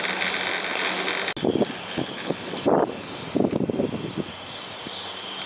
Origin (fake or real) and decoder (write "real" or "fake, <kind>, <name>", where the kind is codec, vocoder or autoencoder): real